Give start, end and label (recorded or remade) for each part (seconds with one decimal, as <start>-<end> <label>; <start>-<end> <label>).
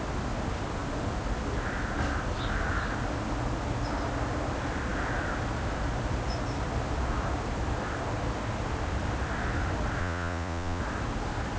0.0-10.0 recorded; 10.0-10.8 remade; 10.8-11.6 recorded